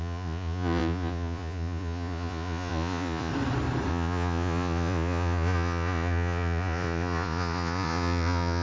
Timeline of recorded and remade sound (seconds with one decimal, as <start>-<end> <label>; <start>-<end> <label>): 0.0-3.3 remade; 3.3-3.9 recorded; 3.9-8.6 remade

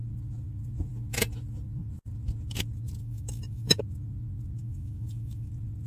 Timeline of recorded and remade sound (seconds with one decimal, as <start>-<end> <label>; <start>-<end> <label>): 0.0-3.0 recorded; 3.0-3.8 remade; 3.8-4.6 recorded; 4.6-5.5 remade; 5.5-5.9 recorded

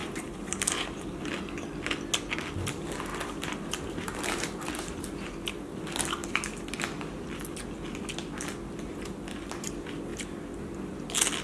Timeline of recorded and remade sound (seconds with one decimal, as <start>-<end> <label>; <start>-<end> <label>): 0.0-1.3 remade; 1.3-3.1 recorded; 3.1-5.8 remade; 5.8-11.4 recorded

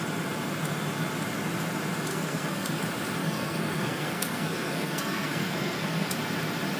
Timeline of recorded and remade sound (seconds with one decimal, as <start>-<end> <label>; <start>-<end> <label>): 0.0-2.1 recorded; 2.1-2.8 remade; 2.8-3.2 recorded; 3.2-6.1 remade; 6.1-6.8 recorded

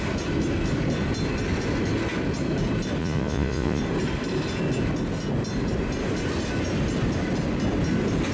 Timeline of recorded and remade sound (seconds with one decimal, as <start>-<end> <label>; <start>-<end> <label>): 0.0-3.0 recorded; 3.0-3.8 remade; 3.8-8.3 recorded

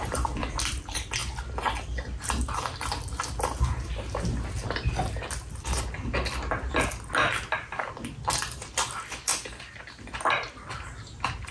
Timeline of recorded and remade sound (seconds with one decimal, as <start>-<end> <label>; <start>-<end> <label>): 0.0-11.5 recorded

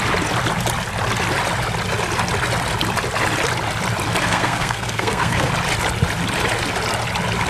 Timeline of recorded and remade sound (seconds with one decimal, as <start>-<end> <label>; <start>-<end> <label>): 0.0-4.2 recorded; 4.2-5.5 remade; 5.5-7.5 recorded